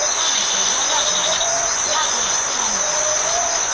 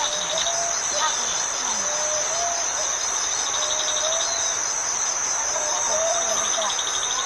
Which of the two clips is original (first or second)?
second